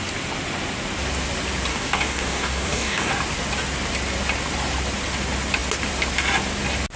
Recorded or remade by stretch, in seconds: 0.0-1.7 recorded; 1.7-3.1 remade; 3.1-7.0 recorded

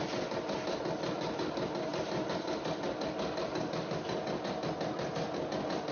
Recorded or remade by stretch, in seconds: 0.0-5.9 recorded

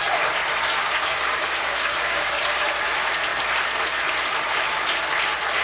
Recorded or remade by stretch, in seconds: 0.0-0.8 recorded; 0.8-2.4 remade; 2.4-5.6 recorded

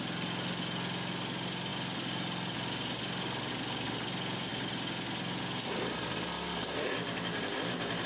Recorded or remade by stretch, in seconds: 0.0-8.1 recorded

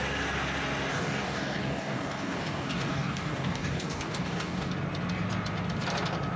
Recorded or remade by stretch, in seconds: 0.0-0.9 recorded; 0.9-4.7 remade; 4.7-6.4 recorded

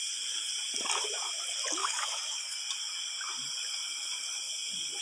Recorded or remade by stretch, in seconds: 0.0-1.8 recorded; 1.8-2.6 remade; 2.6-5.0 recorded

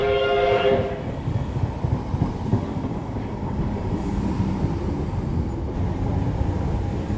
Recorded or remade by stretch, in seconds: 0.0-1.6 remade; 1.6-2.5 recorded; 2.5-4.2 remade; 4.2-7.2 recorded

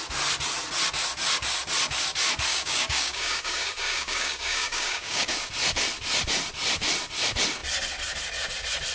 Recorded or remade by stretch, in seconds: 0.0-2.5 recorded; 2.5-5.5 remade; 5.5-8.9 recorded